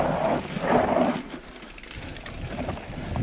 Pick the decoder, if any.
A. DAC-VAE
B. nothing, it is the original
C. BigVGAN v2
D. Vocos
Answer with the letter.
B